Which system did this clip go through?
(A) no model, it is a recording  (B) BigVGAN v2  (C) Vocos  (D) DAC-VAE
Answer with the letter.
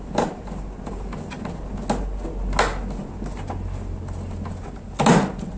A